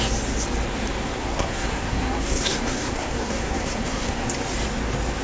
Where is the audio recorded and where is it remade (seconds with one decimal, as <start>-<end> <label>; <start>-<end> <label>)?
0.0-1.2 recorded; 1.2-4.3 remade; 4.3-5.2 recorded